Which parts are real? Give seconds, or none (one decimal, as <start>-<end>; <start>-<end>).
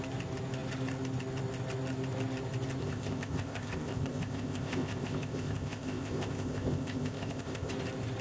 0.0-2.8; 7.7-8.2